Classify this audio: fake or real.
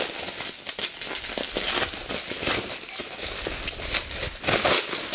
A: real